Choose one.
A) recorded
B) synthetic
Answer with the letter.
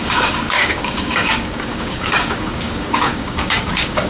B